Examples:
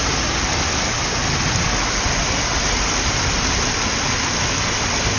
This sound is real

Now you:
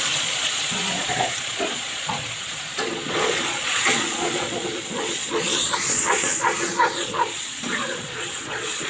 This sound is fake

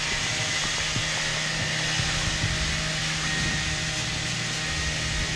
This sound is real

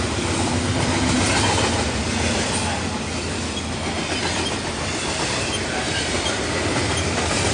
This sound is real